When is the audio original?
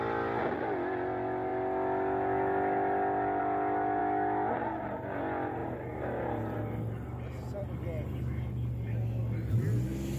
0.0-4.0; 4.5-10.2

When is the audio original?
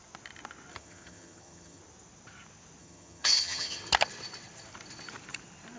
0.0-0.7; 1.8-2.8; 3.8-5.8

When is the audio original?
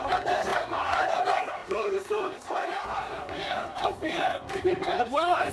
none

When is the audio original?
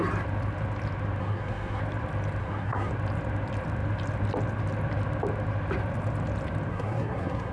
0.0-1.2; 1.8-2.4; 2.9-6.7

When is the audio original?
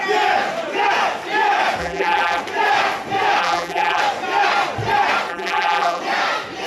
0.0-1.8; 2.4-3.4; 4.0-5.3; 6.0-6.7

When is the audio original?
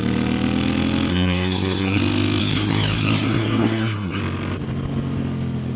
0.0-1.1; 2.0-2.4; 4.2-5.8